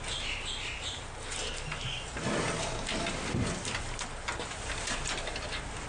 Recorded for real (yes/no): yes